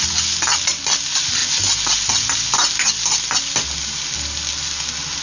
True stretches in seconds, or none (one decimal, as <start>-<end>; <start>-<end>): 0.0-5.2

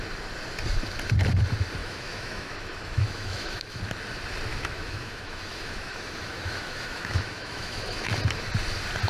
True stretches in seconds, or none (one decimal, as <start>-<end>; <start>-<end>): 0.0-1.8; 3.8-4.5; 8.1-9.1

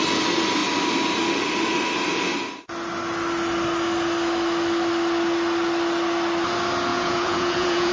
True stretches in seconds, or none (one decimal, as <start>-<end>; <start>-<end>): 0.0-6.9